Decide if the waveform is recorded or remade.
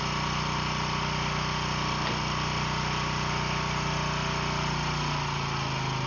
recorded